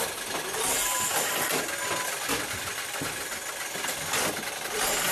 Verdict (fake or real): real